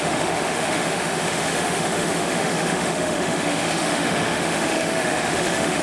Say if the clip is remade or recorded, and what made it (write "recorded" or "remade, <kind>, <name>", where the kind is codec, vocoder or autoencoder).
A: remade, autoencoder, DAC-VAE